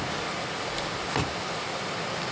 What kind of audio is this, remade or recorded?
recorded